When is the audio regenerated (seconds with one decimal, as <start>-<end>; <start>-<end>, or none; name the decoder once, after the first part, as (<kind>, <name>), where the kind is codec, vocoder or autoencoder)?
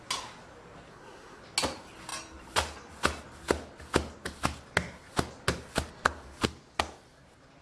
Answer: 0.9-1.4 (codec, SNAC)